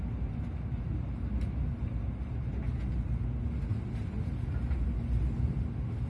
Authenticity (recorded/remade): recorded